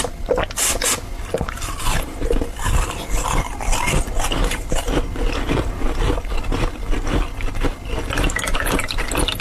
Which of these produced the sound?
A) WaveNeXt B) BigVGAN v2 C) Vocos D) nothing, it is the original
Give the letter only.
D